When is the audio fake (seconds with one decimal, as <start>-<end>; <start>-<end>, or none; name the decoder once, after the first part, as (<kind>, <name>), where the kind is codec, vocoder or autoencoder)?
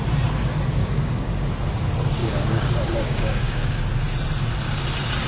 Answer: 0.8-1.5 (codec, DAC); 2.2-3.8